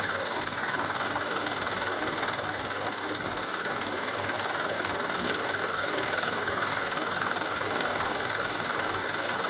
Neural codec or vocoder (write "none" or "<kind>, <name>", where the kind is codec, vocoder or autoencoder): codec, DAC